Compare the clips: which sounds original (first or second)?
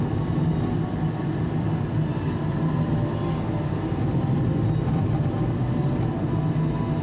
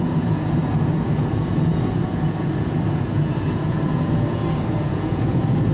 first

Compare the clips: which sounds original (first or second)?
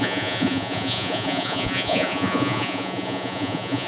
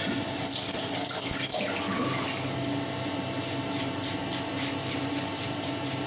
second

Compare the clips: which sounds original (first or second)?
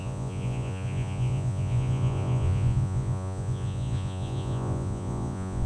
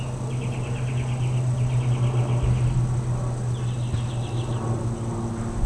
second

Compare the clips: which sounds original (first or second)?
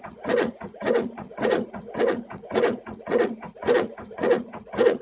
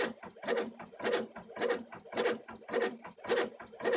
second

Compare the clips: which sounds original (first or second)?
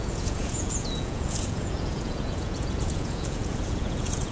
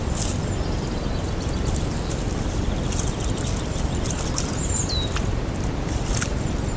second